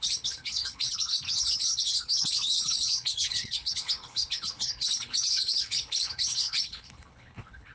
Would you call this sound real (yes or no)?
no